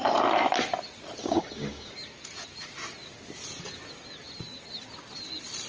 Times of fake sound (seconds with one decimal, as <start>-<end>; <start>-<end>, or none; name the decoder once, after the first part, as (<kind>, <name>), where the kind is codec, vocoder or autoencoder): 1.2-1.9 (codec, DAC)

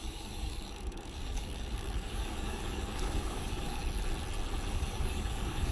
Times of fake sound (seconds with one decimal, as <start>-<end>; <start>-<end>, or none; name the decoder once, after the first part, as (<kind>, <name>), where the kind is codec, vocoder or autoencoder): 0.0-3.8 (codec, DAC); 4.7-5.7